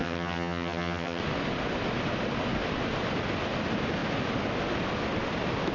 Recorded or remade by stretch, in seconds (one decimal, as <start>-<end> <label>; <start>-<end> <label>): 0.0-1.2 remade; 1.2-5.7 recorded